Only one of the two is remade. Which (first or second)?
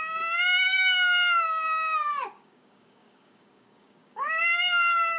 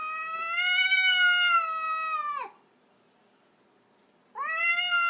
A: first